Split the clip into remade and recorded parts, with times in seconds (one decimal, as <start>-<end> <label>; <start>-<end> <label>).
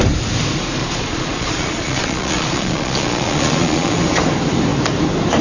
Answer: 0.0-0.8 recorded; 0.8-4.0 remade; 4.0-5.4 recorded